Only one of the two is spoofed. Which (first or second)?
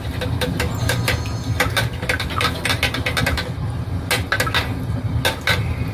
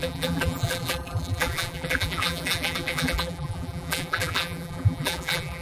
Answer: second